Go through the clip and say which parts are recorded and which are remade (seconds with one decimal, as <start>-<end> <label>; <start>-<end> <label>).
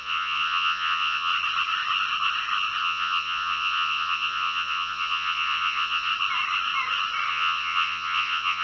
0.0-1.3 remade; 1.3-2.8 recorded; 2.8-6.1 remade; 6.1-7.3 recorded; 7.3-8.6 remade